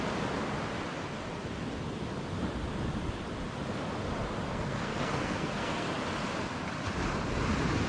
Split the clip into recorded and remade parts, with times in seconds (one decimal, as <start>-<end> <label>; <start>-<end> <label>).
0.0-4.5 recorded; 4.5-5.9 remade; 5.9-7.9 recorded